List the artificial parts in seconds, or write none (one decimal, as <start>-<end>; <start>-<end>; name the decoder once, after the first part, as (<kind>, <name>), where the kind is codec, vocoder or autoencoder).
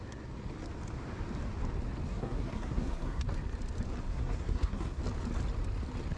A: 2.1-3.2 (codec, SNAC); 4.1-5.0